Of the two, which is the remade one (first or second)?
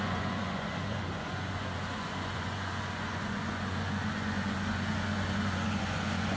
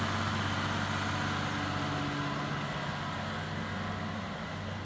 first